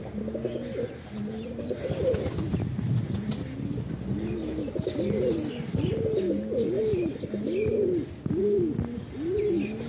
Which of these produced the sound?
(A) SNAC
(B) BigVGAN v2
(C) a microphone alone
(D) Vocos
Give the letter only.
C